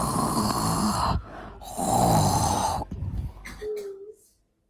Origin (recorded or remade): recorded